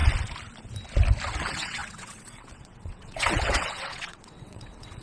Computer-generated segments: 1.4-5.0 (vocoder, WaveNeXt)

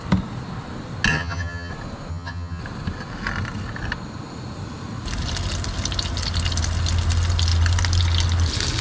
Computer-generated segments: 1.1-1.7 (vocoder, HiFi-GAN); 2.1-2.6

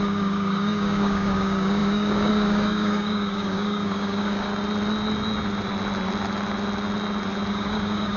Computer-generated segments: 0.0-4.5 (codec, DAC); 7.5-8.2